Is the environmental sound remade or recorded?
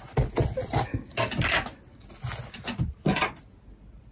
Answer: recorded